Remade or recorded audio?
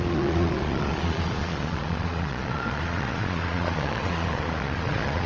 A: remade